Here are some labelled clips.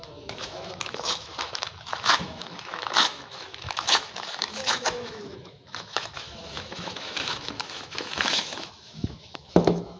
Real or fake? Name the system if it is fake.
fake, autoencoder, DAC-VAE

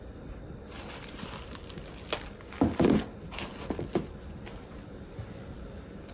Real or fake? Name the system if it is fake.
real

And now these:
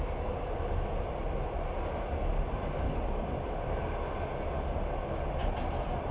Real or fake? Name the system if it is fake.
real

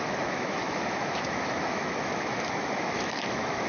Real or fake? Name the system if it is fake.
fake, autoencoder, DAC-VAE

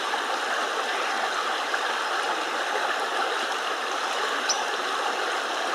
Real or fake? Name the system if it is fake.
real